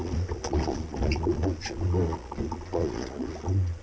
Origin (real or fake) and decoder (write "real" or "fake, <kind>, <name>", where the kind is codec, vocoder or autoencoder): fake, vocoder, Vocos